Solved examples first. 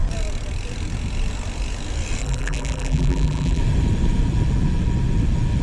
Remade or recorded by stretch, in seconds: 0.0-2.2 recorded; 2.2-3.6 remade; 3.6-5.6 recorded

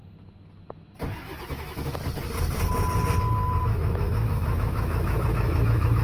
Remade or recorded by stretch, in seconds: 0.0-3.6 recorded; 3.6-6.0 remade

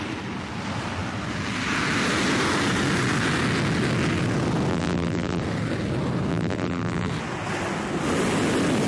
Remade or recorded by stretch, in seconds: 0.0-4.7 recorded; 4.7-5.4 remade; 5.4-6.3 recorded; 6.3-7.1 remade; 7.1-8.9 recorded

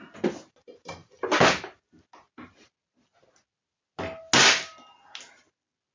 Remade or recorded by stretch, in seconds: 0.0-5.9 recorded

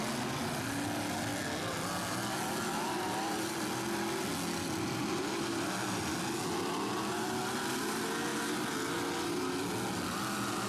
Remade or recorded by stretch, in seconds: 0.0-10.7 recorded

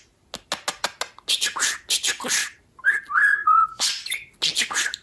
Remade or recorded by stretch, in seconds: 0.0-3.4 recorded; 3.4-3.9 remade; 3.9-5.0 recorded